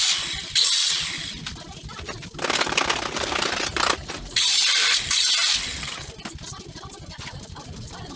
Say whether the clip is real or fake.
real